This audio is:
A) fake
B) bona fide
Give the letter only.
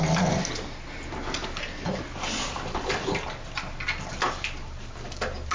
B